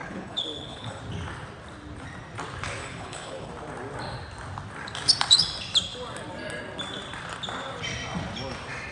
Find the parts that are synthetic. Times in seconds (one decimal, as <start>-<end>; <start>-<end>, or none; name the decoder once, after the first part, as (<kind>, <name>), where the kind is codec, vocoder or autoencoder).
0.0-1.0 (codec, HILCodec); 2.8-3.5